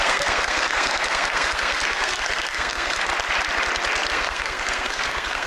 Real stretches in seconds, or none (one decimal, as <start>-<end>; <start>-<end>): 3.1-4.1